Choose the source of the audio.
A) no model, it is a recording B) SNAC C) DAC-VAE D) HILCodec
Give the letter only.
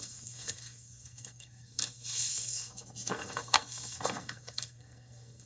B